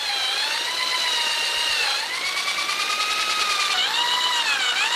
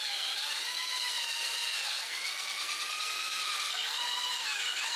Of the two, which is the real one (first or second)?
first